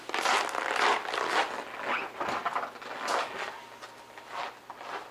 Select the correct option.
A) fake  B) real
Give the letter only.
B